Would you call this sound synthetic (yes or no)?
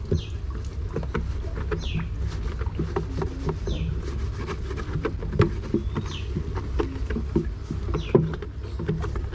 no